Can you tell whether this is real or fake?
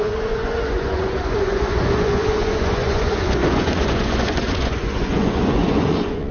fake